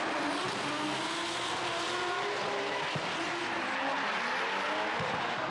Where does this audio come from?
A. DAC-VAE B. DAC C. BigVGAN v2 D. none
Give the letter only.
D